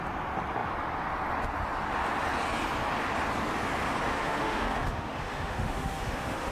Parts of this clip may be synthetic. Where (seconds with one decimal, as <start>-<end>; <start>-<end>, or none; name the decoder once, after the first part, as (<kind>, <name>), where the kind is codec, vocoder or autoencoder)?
4.1-6.5 (autoencoder, DAC-VAE)